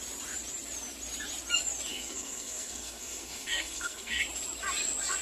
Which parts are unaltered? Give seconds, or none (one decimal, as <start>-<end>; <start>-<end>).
0.0-1.9; 4.2-5.2